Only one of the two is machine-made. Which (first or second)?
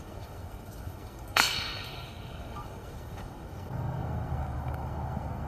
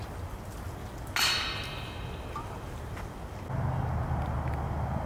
first